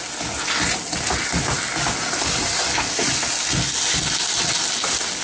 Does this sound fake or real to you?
real